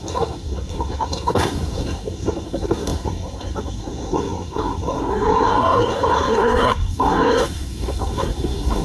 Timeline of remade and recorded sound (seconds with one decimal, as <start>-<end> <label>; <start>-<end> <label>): 0.0-8.8 remade